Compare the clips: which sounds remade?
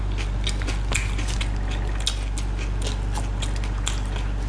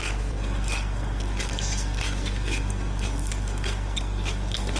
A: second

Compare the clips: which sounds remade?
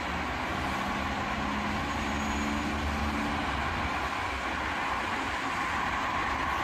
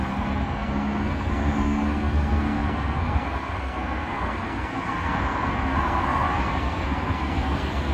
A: second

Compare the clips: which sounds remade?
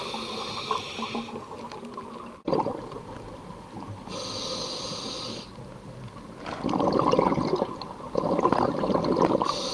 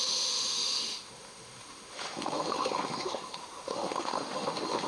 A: second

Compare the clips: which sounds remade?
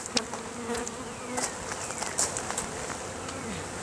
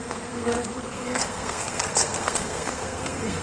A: second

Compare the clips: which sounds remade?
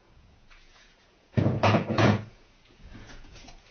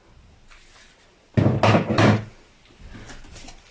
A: first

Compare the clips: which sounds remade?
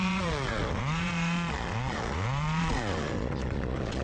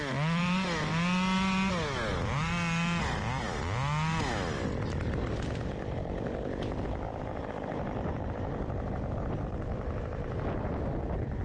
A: first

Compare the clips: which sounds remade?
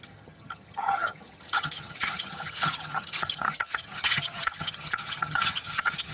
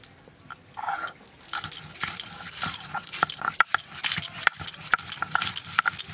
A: first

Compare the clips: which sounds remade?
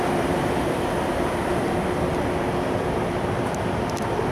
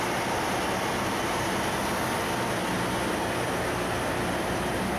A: first